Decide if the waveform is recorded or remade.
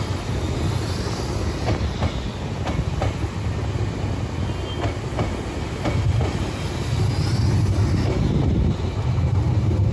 recorded